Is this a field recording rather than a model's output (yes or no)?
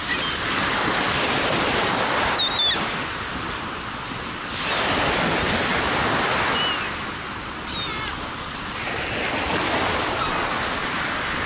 yes